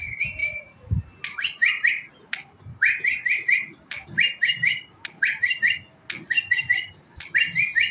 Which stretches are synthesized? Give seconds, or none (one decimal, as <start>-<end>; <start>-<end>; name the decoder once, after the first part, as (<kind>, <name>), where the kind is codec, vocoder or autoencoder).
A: none